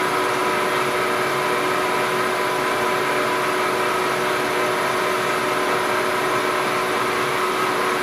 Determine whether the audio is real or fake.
real